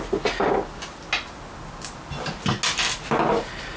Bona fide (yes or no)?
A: yes